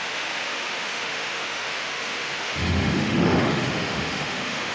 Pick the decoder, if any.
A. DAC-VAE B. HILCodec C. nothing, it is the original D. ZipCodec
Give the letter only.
A